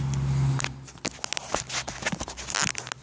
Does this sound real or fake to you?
real